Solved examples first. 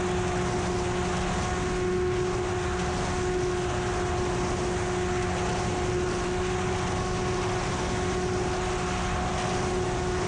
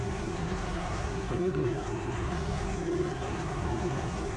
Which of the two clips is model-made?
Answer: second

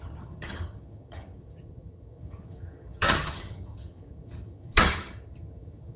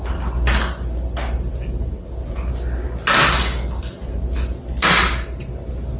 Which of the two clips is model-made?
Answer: first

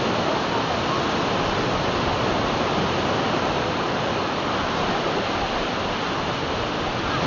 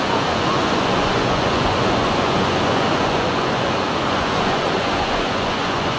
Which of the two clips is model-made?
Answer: second